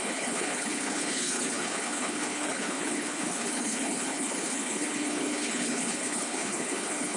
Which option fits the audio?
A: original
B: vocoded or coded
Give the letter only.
B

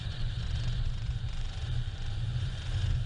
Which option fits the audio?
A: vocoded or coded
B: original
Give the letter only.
A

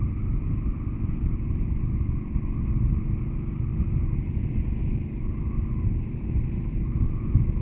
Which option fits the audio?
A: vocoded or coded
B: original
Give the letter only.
A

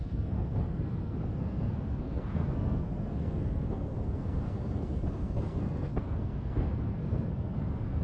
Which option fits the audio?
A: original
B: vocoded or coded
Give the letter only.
B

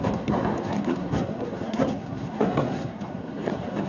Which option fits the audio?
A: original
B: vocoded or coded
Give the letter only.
B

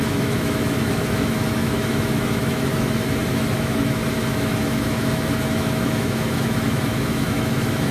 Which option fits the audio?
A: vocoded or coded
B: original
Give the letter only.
A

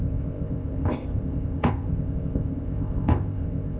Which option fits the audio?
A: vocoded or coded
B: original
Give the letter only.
A